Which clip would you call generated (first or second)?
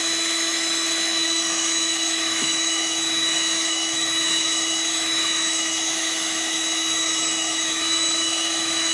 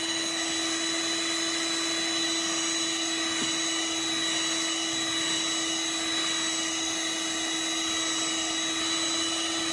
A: first